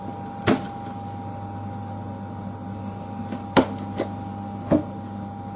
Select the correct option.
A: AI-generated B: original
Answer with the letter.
B